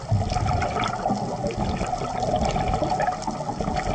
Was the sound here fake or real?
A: real